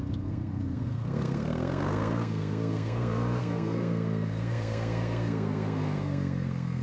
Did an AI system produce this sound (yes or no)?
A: yes